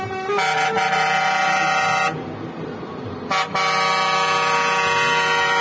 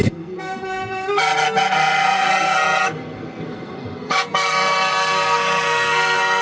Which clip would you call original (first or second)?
first